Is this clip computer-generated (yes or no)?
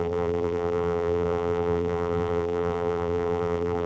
yes